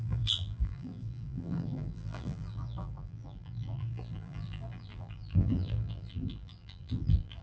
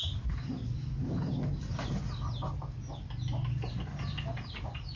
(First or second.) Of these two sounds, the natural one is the second